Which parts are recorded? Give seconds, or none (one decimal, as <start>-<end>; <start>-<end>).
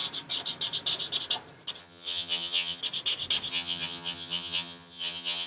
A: 0.0-1.8; 2.8-3.5